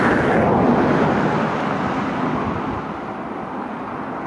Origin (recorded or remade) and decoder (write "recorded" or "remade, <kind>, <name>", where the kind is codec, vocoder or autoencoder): recorded